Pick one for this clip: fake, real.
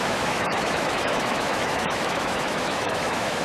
fake